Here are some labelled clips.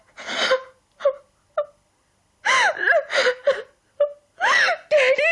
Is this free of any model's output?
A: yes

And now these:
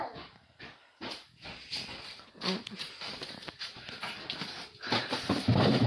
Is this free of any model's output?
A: no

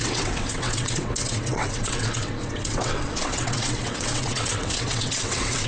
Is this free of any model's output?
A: no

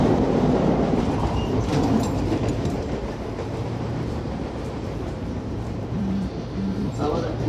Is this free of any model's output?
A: no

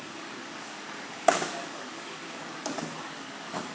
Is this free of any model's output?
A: no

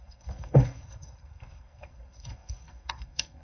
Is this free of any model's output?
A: no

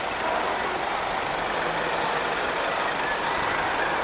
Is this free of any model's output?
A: yes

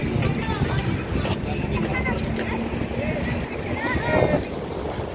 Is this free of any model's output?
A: yes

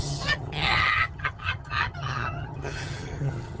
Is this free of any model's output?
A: no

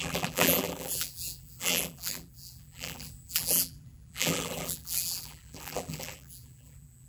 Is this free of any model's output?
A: no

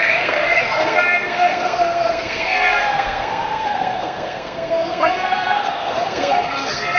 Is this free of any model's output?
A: no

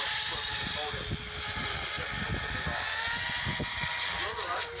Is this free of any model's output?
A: yes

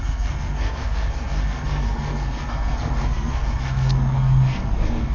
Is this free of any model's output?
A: no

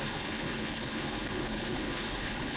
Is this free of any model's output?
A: no